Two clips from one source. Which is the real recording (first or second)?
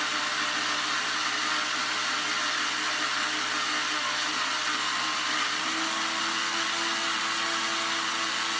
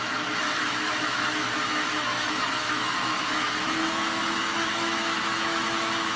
first